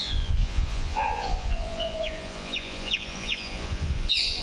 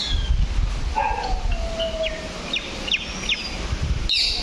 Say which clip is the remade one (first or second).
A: first